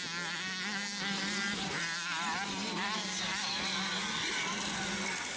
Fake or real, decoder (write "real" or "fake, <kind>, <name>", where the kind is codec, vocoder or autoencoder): real